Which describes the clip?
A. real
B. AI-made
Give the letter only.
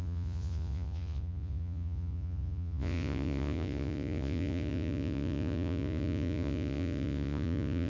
B